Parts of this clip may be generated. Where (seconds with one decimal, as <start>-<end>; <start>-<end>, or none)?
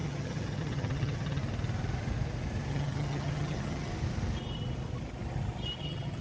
0.0-1.4; 2.7-3.9; 5.8-6.2